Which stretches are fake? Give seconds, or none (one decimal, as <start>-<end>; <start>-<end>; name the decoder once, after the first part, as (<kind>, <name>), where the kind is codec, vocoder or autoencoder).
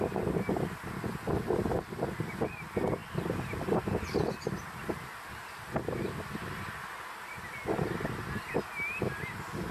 3.0-4.5 (vocoder, BigVGAN v2); 5.4-6.1